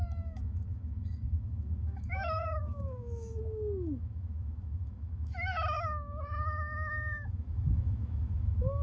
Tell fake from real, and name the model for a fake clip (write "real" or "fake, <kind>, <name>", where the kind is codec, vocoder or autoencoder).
fake, autoencoder, DAC-VAE